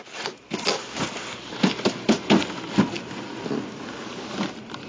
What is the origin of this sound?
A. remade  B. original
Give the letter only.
B